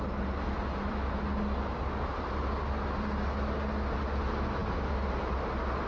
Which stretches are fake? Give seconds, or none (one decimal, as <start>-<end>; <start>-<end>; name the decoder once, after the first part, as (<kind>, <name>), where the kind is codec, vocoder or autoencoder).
none